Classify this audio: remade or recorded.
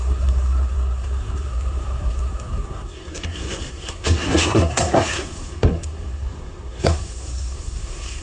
remade